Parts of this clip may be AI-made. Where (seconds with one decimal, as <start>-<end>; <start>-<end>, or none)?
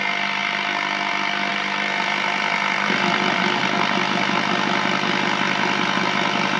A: 1.5-3.6